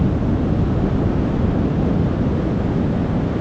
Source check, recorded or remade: recorded